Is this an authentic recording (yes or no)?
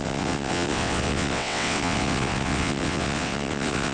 no